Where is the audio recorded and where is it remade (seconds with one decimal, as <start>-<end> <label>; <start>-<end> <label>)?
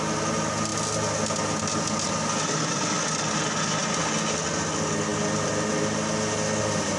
0.0-7.0 recorded